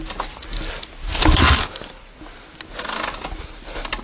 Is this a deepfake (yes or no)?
no